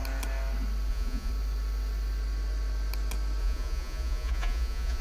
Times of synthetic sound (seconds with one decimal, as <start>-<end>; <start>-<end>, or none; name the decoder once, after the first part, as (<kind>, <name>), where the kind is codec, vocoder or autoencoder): 0.9-1.3 (vocoder, Vocos); 3.4-5.0